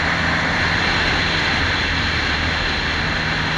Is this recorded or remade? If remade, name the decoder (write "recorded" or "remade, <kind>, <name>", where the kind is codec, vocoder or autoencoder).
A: recorded